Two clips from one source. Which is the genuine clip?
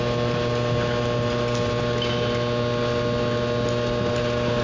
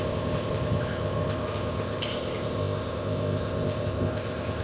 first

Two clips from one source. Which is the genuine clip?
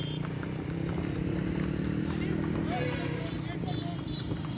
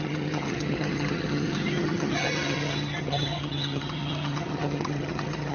first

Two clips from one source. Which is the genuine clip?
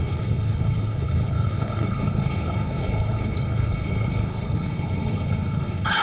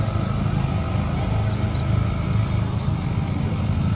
second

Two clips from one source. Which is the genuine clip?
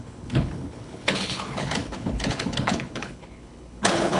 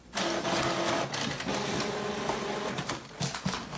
second